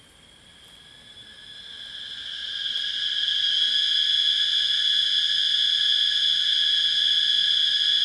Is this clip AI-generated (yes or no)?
no